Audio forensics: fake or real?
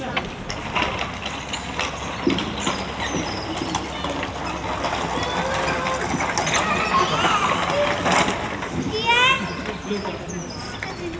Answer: real